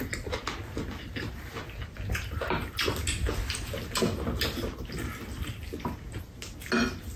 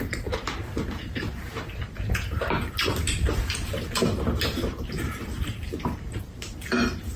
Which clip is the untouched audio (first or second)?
first